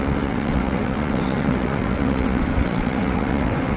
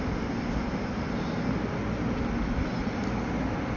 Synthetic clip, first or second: first